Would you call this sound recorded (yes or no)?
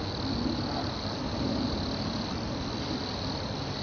yes